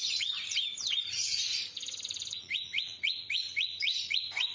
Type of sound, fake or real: fake